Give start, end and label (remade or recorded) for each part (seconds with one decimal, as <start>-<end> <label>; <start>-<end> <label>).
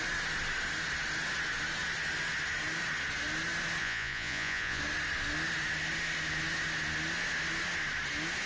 0.0-3.8 recorded; 3.8-4.8 remade; 4.8-8.5 recorded